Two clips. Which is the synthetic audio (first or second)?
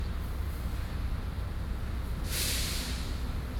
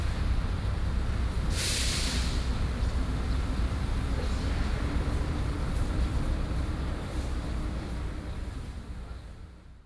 second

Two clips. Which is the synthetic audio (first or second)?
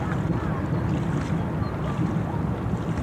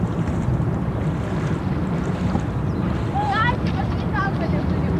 second